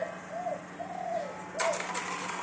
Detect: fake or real real